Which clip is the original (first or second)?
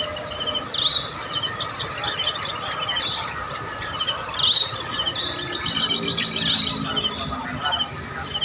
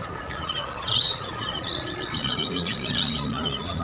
first